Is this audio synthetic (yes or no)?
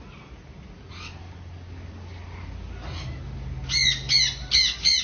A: no